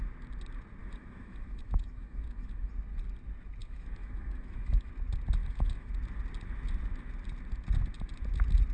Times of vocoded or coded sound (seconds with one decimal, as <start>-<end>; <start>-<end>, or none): 0.8-2.7; 3.6-4.9; 5.4-5.9